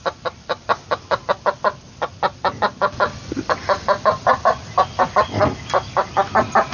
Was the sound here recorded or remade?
recorded